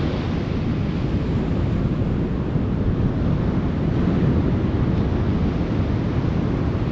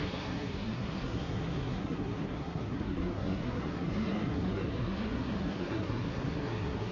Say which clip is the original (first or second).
first